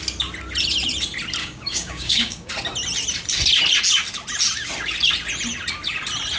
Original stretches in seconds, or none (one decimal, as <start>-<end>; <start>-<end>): 0.0-1.4; 2.5-6.4